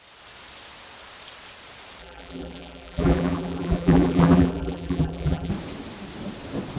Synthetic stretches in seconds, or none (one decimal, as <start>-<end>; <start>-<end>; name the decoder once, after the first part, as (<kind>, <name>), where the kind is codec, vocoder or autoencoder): 2.0-5.5 (vocoder, BigVGAN v2)